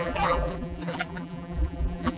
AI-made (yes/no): yes